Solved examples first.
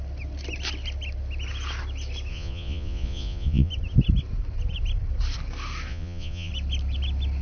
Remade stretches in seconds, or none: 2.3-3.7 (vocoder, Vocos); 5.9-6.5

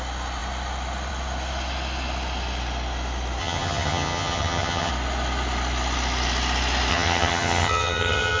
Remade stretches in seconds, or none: 3.4-4.9 (vocoder, HiFi-GAN); 6.9-8.4

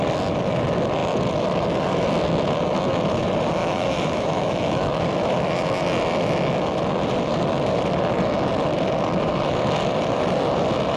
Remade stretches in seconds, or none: 3.6-4.9 (autoencoder, DAC-VAE)

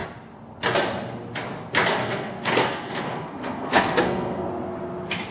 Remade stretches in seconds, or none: 2.0-4.5 (codec, SNAC)

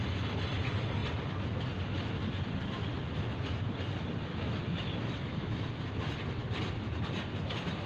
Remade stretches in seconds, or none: 4.3-5.8 (autoencoder, DAC-VAE)